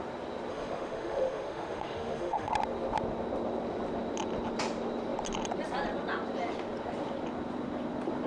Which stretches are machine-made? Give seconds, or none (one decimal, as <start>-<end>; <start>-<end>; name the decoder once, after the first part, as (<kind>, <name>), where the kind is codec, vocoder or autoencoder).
0.5-2.5 (autoencoder, DAC-VAE)